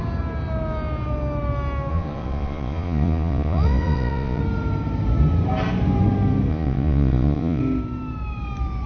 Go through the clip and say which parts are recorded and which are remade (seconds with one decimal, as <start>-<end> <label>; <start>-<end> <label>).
0.0-1.9 recorded; 1.9-4.4 remade; 4.4-6.5 recorded; 6.5-7.6 remade; 7.6-8.9 recorded